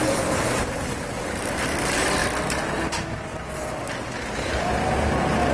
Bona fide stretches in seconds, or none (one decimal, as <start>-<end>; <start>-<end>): 0.0-5.5